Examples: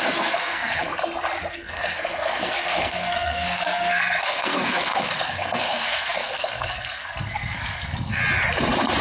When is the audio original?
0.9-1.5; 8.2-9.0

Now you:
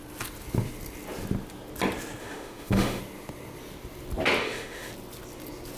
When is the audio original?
0.0-2.2; 3.0-4.4; 4.9-5.8

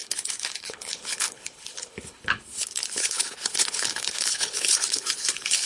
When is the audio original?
none

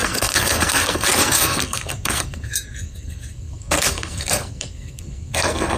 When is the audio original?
none